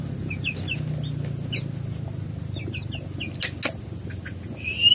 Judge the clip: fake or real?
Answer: real